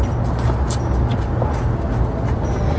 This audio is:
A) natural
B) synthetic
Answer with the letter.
A